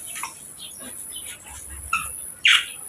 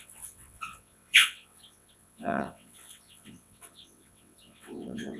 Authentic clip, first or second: first